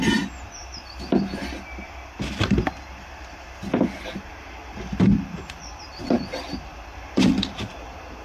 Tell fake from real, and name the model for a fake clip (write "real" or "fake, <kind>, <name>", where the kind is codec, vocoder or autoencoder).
real